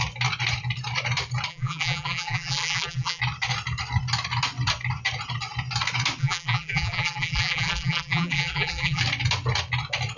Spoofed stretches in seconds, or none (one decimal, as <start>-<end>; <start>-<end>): 1.5-3.2; 6.2-9.0